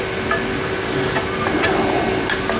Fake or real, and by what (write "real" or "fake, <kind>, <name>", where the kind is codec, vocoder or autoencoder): real